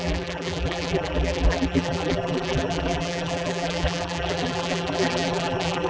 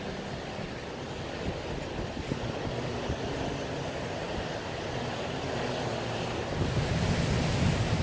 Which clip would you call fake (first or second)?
first